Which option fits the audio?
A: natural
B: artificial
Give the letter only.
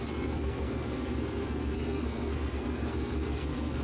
B